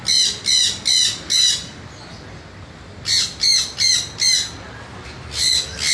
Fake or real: real